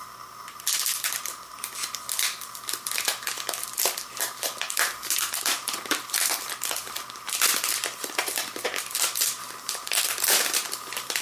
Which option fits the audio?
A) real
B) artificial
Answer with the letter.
B